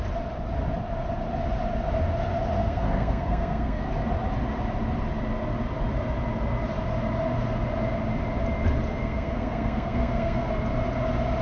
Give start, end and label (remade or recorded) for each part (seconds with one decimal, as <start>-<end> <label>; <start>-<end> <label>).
0.0-2.6 recorded; 2.6-3.8 remade; 3.8-8.9 recorded; 8.9-10.5 remade; 10.5-11.4 recorded